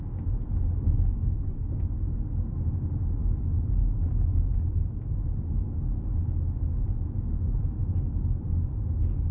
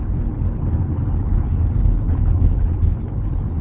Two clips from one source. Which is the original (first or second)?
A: first